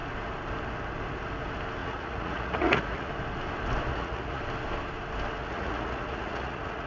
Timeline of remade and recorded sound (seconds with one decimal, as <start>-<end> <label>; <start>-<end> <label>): 0.0-1.8 recorded; 1.8-3.1 remade; 3.1-3.9 recorded; 3.9-4.4 remade; 4.4-5.4 recorded; 5.4-6.9 remade